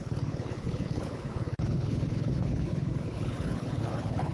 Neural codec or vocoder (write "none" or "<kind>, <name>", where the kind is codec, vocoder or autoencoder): codec, HILCodec